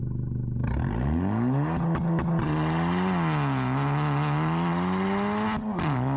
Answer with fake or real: real